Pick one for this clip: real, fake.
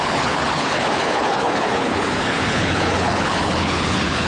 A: fake